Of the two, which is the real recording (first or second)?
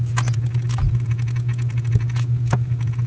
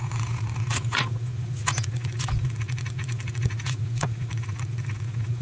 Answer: first